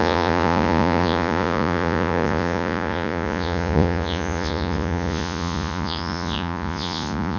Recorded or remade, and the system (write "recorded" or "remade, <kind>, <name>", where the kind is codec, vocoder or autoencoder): remade, vocoder, Vocos